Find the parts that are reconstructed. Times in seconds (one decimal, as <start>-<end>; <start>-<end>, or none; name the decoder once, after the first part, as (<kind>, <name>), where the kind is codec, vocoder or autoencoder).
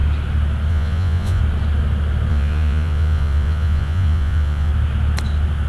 0.7-1.4 (vocoder, Vocos); 2.3-4.7